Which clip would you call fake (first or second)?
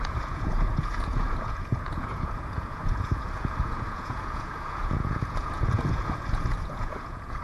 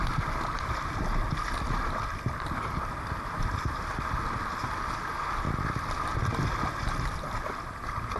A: first